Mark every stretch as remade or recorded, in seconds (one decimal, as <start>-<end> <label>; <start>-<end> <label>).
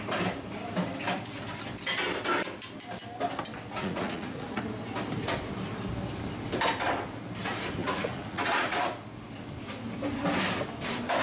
0.0-3.8 recorded; 3.8-4.6 remade; 4.6-7.8 recorded; 7.8-8.9 remade; 8.9-11.2 recorded